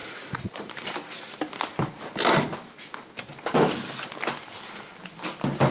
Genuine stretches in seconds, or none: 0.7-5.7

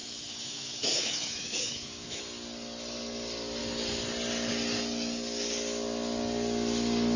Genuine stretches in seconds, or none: 2.2-7.2

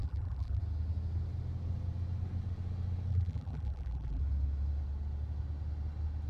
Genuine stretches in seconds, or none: 0.6-3.1; 4.2-6.3